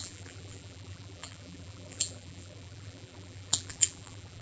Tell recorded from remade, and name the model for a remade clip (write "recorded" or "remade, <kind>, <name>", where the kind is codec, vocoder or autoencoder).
remade, vocoder, BigVGAN v2